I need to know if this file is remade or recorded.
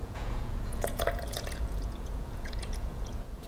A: remade